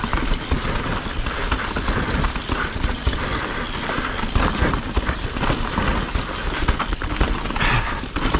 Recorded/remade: recorded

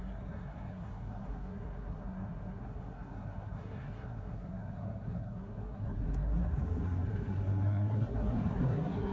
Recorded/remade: remade